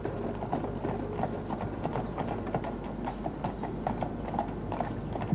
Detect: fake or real real